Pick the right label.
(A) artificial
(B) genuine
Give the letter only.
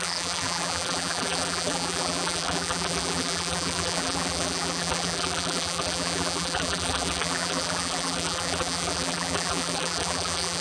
A